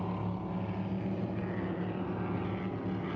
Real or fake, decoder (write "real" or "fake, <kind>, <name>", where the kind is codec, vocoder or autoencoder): real